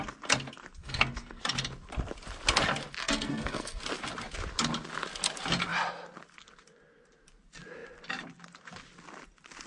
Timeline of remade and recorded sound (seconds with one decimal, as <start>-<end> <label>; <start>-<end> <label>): 0.0-0.8 recorded; 0.8-1.4 remade; 1.4-3.0 recorded; 3.0-3.8 remade; 3.8-9.7 recorded